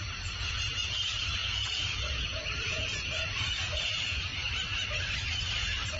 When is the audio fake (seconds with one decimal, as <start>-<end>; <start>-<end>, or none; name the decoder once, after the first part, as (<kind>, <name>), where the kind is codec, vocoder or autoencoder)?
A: 0.0-4.3 (vocoder, Vocos); 5.5-6.0